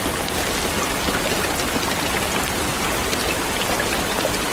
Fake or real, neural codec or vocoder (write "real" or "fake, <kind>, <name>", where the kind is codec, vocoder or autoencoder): real